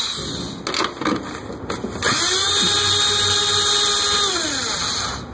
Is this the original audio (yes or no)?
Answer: yes